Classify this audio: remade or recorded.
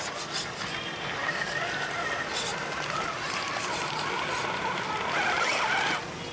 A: recorded